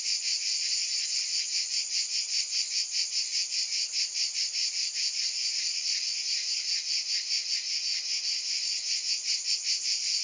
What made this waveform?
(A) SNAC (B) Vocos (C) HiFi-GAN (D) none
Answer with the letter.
D